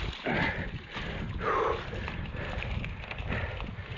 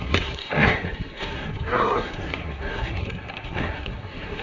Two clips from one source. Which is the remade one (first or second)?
second